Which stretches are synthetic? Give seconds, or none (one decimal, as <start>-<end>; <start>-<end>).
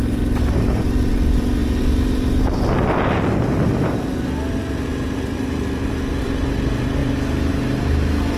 none